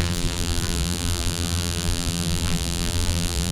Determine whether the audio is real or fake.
fake